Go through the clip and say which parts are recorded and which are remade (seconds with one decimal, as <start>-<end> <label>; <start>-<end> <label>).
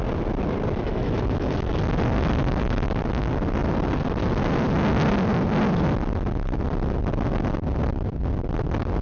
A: 0.0-0.9 recorded; 0.9-1.7 remade; 1.7-9.0 recorded